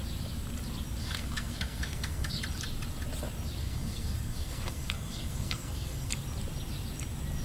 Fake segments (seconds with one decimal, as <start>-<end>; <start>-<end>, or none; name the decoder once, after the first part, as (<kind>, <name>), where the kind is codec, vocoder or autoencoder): 1.0-2.4 (codec, SNAC); 3.6-6.1